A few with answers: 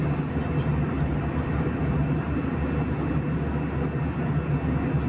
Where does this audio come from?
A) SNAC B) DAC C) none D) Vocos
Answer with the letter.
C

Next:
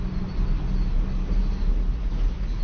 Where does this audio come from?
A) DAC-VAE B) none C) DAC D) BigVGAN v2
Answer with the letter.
B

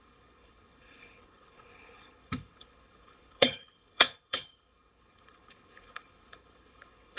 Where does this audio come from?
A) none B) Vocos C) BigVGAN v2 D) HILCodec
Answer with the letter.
D